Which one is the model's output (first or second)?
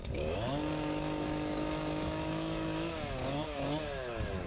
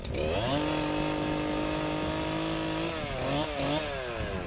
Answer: first